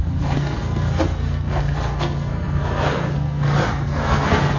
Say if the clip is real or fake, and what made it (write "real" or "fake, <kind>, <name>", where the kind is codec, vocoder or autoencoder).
fake, codec, SNAC